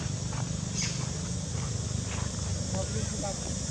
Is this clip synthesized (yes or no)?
yes